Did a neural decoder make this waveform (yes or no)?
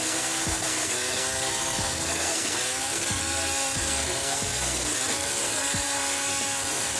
yes